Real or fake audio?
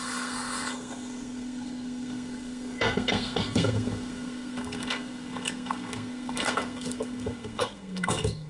fake